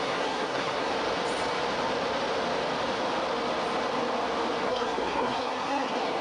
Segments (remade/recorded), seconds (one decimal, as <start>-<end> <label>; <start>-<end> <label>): 0.0-0.9 remade; 0.9-4.6 recorded; 4.6-6.2 remade